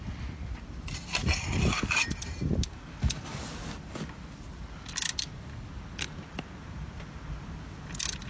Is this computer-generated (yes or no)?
no